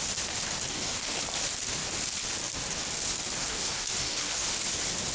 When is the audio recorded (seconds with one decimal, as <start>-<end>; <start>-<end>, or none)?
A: 0.0-0.7; 1.2-3.4; 4.5-5.1